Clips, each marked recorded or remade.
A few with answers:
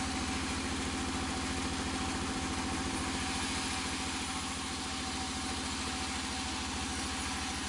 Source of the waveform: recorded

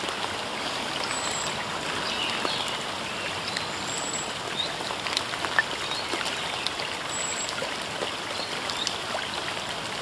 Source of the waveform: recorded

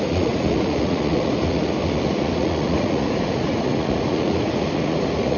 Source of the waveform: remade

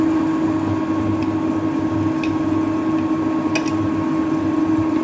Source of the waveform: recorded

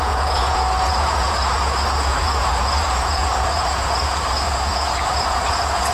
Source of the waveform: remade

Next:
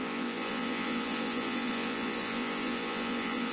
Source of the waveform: remade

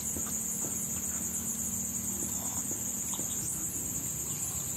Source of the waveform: recorded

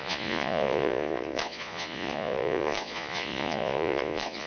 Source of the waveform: remade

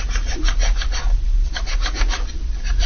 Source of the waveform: recorded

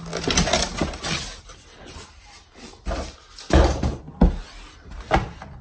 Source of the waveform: recorded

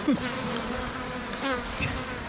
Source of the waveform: recorded